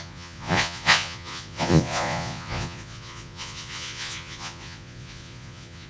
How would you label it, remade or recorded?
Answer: remade